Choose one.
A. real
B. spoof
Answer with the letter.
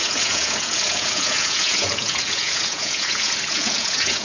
B